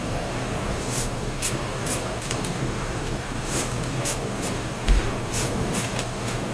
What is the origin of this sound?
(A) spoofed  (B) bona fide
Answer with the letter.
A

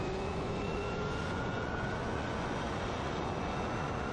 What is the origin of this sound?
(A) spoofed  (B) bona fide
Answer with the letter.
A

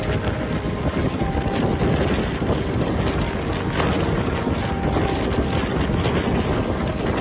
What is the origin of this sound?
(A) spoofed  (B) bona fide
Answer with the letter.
B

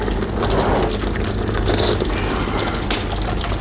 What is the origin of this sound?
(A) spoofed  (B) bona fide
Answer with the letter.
B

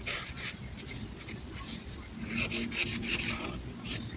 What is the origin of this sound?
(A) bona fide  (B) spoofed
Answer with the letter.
A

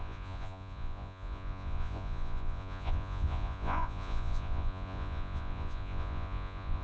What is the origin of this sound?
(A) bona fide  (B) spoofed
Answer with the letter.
B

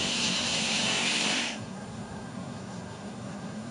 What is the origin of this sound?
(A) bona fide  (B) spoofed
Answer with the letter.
B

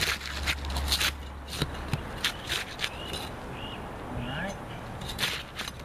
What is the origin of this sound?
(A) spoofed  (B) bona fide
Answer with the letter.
B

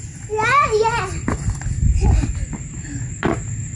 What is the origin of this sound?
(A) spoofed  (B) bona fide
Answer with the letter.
B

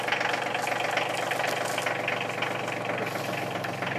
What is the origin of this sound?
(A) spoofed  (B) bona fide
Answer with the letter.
B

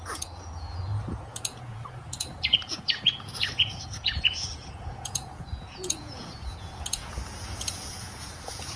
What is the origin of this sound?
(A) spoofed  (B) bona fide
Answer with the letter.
A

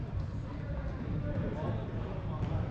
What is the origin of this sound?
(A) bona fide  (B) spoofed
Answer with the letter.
B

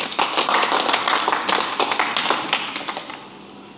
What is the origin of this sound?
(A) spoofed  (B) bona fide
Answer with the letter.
A